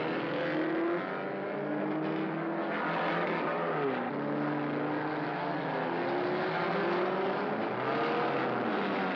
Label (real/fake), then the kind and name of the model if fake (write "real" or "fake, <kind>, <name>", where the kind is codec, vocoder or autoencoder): real